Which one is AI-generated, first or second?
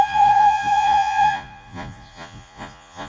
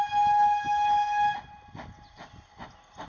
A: first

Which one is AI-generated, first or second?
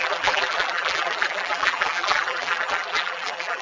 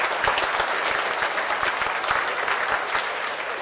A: first